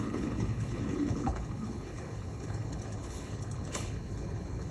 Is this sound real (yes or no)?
no